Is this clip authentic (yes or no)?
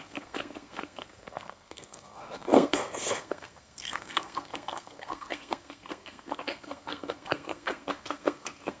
no